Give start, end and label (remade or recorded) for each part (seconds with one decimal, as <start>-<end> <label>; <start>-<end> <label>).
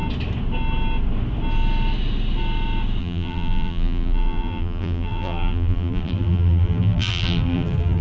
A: 0.0-3.0 recorded; 3.0-8.0 remade